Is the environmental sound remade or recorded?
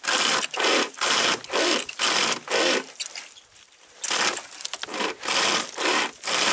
recorded